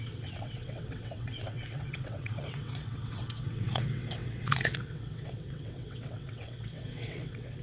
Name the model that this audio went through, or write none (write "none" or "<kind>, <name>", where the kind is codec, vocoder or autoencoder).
vocoder, WaveNeXt